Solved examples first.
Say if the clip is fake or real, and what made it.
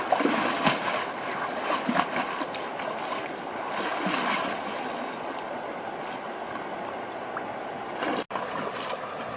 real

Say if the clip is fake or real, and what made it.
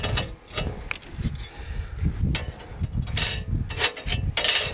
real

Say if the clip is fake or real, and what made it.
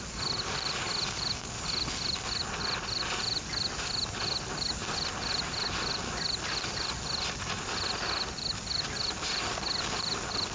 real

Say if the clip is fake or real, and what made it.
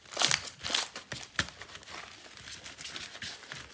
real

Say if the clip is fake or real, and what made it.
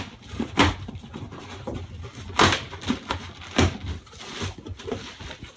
real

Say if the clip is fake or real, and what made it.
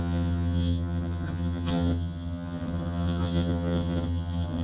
fake, vocoder, HiFi-GAN